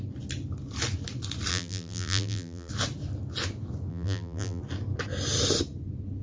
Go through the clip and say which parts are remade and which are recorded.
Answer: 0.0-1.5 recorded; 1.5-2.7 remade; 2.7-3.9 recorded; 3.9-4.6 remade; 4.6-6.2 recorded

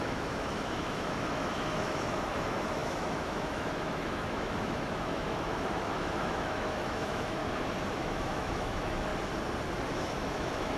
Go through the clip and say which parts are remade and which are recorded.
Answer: 0.0-7.4 remade; 7.4-7.9 recorded; 7.9-9.1 remade; 9.1-9.9 recorded; 9.9-10.8 remade

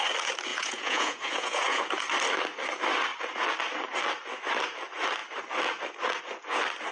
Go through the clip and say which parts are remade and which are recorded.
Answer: 0.0-0.5 recorded; 0.5-1.9 remade; 1.9-6.9 recorded

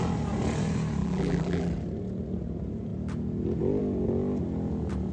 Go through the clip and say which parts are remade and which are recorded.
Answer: 0.0-1.0 recorded; 1.0-1.7 remade; 1.7-5.1 recorded

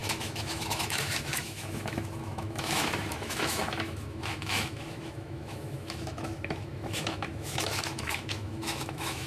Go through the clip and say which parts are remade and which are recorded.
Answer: 0.0-9.3 remade